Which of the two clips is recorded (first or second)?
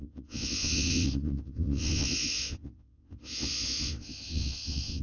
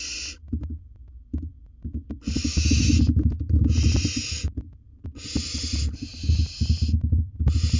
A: second